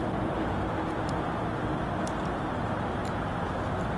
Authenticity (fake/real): real